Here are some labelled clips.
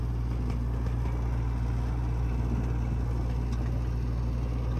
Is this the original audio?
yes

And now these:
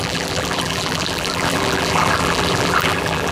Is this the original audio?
no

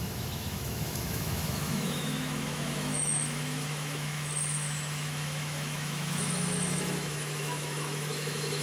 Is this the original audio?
no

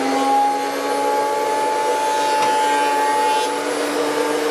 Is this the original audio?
yes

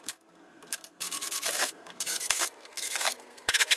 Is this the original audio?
no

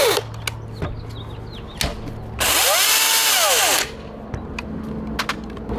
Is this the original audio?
yes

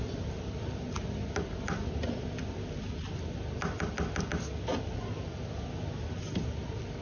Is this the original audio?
yes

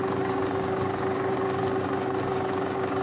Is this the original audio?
no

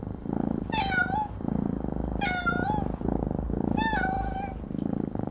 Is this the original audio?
yes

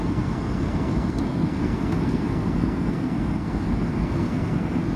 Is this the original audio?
no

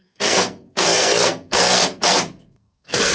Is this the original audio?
no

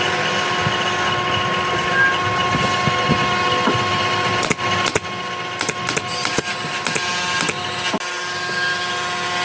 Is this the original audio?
yes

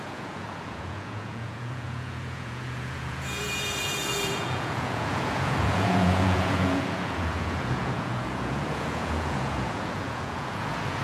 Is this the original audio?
no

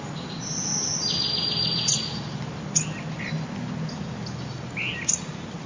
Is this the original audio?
yes